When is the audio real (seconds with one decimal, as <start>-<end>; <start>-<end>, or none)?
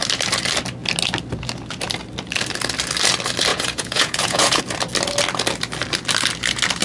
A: 0.0-3.5; 4.6-6.8